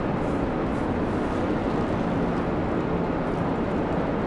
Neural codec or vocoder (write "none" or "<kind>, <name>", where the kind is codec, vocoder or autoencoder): none